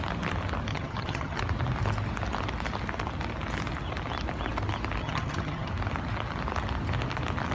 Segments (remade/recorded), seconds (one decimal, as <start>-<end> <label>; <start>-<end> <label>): 0.0-0.7 recorded; 0.7-1.4 remade; 1.4-5.0 recorded; 5.0-5.7 remade; 5.7-7.5 recorded